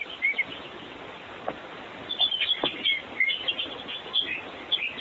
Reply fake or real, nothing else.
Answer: real